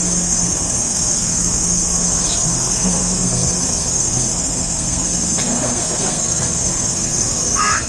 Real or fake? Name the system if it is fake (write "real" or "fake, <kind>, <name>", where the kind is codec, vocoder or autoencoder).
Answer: fake, codec, SNAC